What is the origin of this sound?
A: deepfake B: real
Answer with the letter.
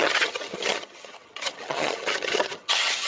A